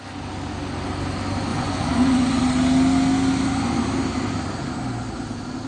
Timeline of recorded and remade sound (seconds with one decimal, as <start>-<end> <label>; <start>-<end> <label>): 0.0-1.5 recorded; 1.5-2.4 remade; 2.4-5.7 recorded